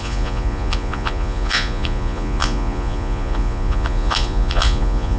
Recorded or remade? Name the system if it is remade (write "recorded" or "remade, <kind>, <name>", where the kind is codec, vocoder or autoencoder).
remade, vocoder, Vocos